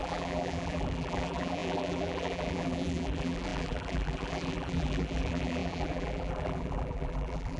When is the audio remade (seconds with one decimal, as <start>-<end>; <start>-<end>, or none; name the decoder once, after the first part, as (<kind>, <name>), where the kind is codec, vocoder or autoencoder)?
0.0-7.6 (vocoder, BigVGAN v2)